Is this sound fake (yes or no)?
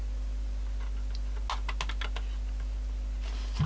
no